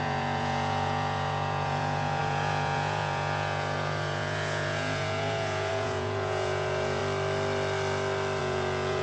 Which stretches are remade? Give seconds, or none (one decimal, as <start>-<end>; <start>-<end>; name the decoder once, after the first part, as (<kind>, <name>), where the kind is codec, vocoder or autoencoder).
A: 0.0-7.0 (vocoder, Vocos); 8.4-9.0